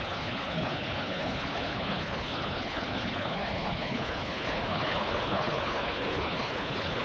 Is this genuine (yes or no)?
no